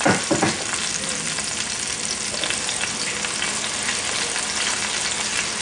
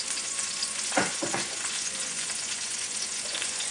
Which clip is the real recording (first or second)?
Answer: first